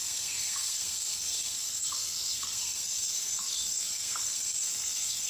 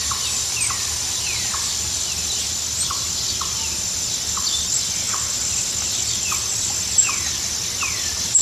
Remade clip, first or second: first